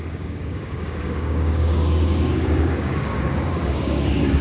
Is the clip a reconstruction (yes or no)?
yes